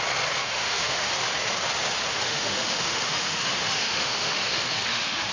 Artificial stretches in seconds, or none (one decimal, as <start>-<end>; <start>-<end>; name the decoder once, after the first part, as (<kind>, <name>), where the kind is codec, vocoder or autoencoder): 0.4-1.1 (autoencoder, DAC-VAE); 2.1-5.3